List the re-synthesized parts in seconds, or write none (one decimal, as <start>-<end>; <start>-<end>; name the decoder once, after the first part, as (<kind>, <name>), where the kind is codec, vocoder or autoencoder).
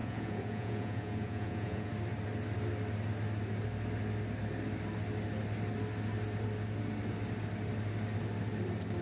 0.0-1.9 (vocoder, Vocos)